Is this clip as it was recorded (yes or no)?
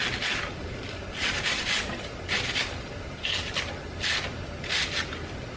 yes